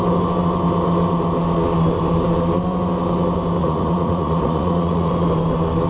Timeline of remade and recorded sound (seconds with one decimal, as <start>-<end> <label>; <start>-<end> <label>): 0.0-3.6 recorded; 3.6-5.1 remade; 5.1-5.9 recorded